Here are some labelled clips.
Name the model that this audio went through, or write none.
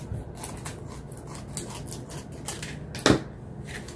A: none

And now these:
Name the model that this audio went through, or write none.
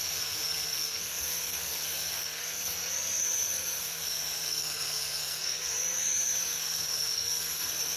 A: codec, SNAC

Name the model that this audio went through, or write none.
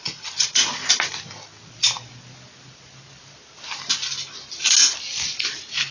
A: none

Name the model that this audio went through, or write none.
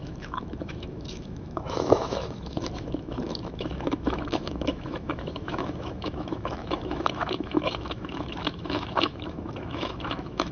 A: autoencoder, DAC-VAE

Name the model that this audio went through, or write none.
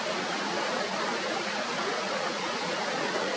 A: vocoder, Vocos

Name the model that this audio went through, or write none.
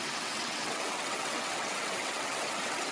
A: vocoder, WaveNeXt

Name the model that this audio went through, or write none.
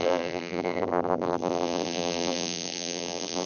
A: vocoder, BigVGAN v2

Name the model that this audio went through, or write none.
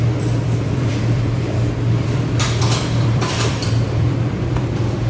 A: vocoder, BigVGAN v2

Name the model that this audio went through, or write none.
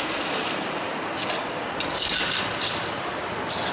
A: none